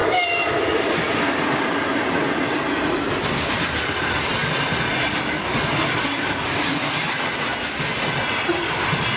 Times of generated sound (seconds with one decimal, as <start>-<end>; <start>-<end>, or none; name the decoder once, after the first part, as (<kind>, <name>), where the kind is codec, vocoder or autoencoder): 0.0-1.4 (vocoder, BigVGAN v2)

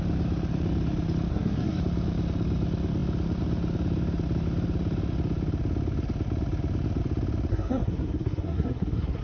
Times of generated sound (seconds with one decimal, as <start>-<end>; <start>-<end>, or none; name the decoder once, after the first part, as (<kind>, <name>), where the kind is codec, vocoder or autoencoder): 1.3-1.8 (codec, SNAC); 7.5-9.2

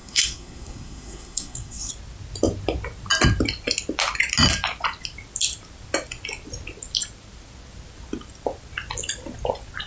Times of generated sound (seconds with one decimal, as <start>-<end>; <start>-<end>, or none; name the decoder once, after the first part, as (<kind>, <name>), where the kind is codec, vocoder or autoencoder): 0.0-1.9 (codec, SNAC)

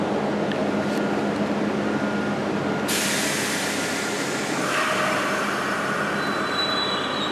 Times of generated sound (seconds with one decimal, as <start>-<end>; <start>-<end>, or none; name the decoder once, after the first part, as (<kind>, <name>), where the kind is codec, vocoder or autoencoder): none

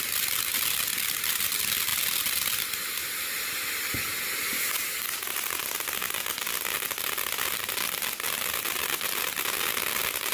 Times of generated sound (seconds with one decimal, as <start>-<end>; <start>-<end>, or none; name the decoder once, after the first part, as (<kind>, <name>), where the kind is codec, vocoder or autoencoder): none

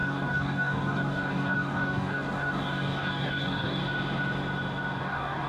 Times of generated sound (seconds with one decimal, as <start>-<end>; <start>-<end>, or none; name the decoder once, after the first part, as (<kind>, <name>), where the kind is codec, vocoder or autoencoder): 0.0-3.8 (codec, DAC); 5.0-5.5

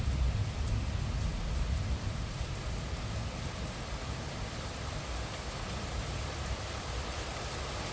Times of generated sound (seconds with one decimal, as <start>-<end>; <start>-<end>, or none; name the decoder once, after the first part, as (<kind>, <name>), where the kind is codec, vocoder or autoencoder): 1.3-2.5 (vocoder, BigVGAN v2); 3.2-7.0